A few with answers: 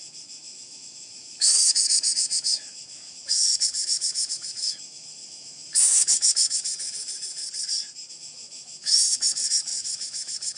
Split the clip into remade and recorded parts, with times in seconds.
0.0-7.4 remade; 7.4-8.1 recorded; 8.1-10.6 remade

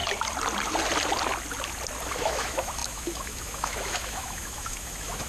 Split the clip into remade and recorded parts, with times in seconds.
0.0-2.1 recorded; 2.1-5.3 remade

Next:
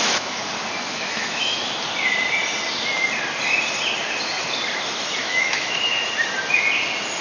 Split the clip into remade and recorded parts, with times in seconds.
0.0-0.4 remade; 0.4-0.9 recorded; 0.9-1.8 remade; 1.8-5.2 recorded; 5.2-5.9 remade; 5.9-7.2 recorded

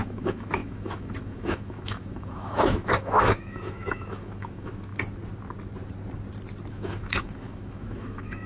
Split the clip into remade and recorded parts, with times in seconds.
0.0-4.9 remade; 4.9-6.7 recorded; 6.7-8.5 remade

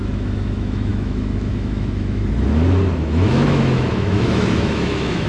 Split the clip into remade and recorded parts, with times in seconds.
0.0-2.2 remade; 2.2-3.0 recorded; 3.0-5.3 remade

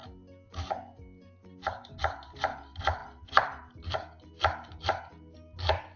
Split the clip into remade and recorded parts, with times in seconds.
0.0-6.0 recorded